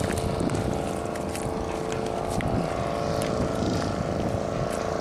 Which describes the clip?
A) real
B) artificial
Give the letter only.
A